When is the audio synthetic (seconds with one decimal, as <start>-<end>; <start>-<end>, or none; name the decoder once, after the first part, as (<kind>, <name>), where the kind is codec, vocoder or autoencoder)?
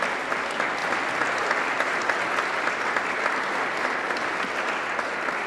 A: none